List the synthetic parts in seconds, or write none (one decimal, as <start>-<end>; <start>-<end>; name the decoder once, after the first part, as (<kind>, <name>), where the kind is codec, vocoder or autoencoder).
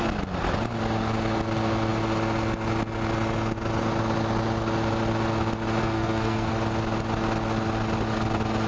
5.8-6.5 (codec, SNAC)